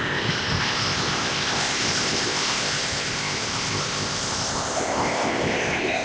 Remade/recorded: remade